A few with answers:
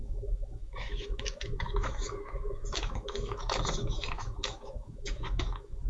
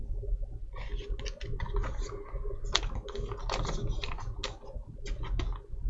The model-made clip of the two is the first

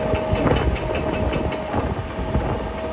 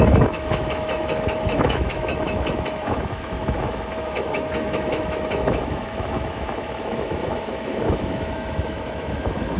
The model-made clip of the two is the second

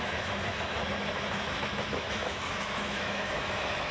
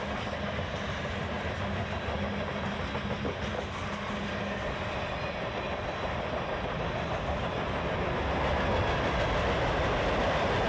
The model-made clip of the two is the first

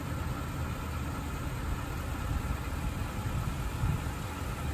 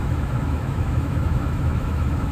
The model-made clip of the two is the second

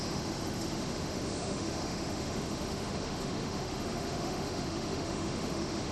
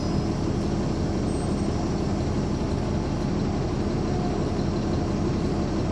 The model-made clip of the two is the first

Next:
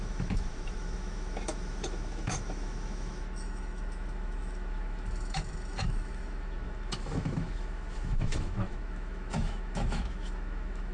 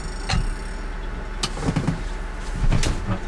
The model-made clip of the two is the first